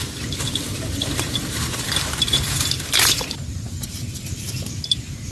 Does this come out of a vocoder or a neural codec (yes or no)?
yes